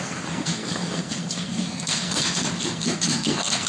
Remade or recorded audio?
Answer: remade